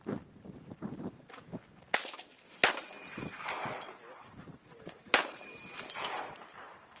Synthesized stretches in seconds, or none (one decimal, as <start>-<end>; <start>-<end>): 0.0-1.5; 2.1-2.6; 4.1-7.0